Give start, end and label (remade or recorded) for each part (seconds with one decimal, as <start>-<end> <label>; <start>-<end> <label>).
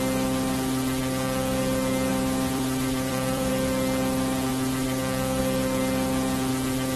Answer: 0.0-2.1 recorded; 2.1-3.5 remade; 3.5-4.5 recorded; 4.5-5.0 remade; 5.0-7.0 recorded